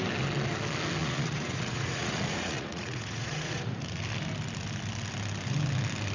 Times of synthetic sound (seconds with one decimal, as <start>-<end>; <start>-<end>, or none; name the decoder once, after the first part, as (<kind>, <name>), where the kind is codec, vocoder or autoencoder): 1.0-3.7 (vocoder, Vocos)

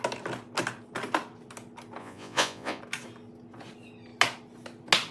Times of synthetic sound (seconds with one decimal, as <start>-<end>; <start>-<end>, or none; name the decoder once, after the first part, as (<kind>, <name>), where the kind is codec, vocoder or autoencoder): 2.0-2.8 (vocoder, Vocos)

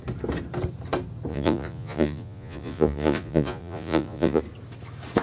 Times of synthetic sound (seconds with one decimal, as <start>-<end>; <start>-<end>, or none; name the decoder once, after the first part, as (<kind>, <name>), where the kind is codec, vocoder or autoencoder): 1.3-4.4 (vocoder, Vocos)

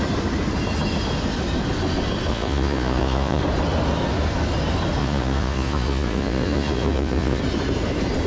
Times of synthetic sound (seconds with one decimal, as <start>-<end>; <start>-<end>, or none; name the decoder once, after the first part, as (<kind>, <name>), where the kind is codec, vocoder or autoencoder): 2.3-3.4 (vocoder, Vocos); 5.0-7.4

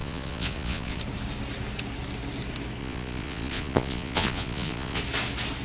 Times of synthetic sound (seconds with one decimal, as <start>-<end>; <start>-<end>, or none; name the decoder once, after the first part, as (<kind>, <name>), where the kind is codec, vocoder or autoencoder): 0.0-1.0 (vocoder, Vocos); 2.8-5.0

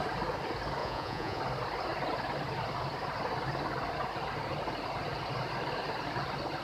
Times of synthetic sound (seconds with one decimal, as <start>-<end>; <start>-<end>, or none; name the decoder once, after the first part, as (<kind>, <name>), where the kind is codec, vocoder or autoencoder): 0.8-1.4 (vocoder, Vocos)

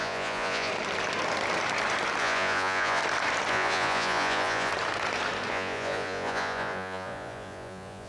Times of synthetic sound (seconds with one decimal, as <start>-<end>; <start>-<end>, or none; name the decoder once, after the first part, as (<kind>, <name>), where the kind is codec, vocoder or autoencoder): 0.0-0.7 (vocoder, Vocos); 2.2-3.0; 3.5-4.7; 5.5-8.1

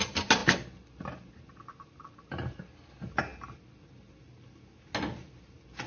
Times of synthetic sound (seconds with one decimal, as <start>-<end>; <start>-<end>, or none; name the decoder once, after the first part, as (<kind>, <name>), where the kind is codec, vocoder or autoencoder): none